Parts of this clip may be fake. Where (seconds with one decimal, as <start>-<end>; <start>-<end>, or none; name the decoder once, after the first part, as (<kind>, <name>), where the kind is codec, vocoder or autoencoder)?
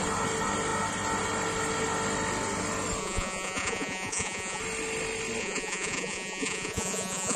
3.0-4.6 (vocoder, Vocos); 5.4-7.4